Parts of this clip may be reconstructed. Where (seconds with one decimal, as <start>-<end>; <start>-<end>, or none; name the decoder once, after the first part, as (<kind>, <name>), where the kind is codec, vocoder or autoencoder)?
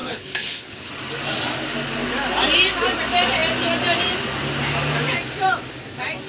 0.0-0.9 (codec, HILCodec)